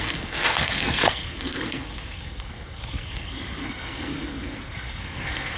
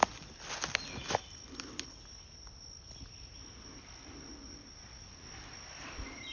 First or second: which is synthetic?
first